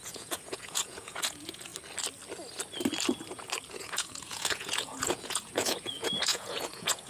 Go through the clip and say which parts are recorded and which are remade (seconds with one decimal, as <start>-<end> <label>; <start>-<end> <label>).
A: 0.0-1.7 remade; 1.7-3.7 recorded; 3.7-7.1 remade